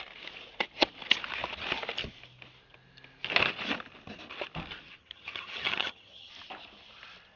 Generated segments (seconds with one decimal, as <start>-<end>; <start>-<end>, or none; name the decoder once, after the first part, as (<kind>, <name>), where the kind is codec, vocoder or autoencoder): 5.0-6.3 (vocoder, HiFi-GAN)